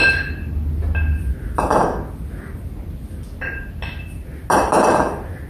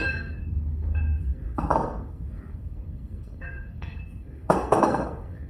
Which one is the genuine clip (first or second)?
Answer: first